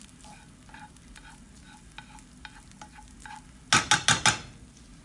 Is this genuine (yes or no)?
yes